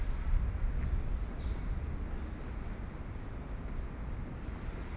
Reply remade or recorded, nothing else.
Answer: recorded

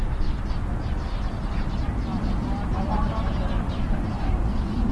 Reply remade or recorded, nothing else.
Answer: recorded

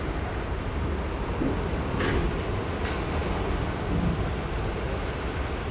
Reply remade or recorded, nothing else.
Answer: recorded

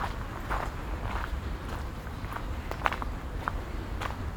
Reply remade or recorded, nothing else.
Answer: remade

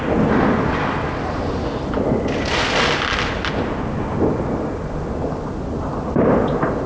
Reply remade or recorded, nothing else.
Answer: recorded